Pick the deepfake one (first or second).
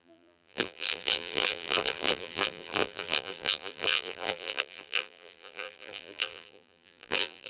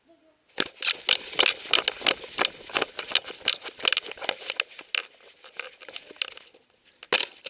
first